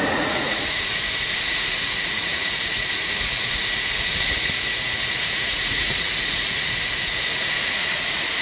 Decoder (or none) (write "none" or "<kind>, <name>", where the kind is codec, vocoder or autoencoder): vocoder, Vocos